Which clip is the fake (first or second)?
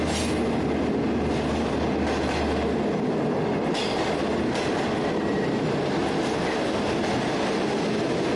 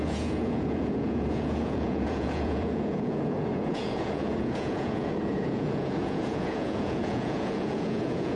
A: second